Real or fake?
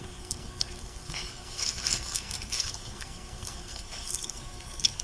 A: fake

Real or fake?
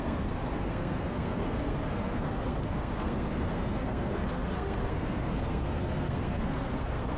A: fake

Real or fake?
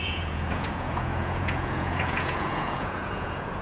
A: fake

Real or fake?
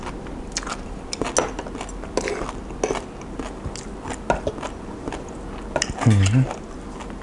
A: real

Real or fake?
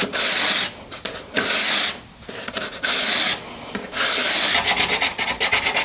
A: real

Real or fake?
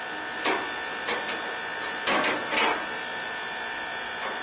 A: real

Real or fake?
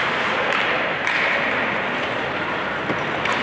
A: real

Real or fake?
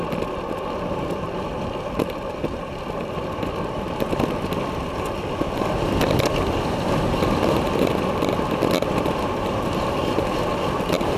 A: real